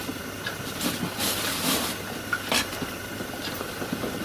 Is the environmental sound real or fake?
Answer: fake